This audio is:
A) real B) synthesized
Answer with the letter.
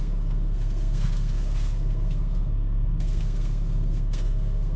B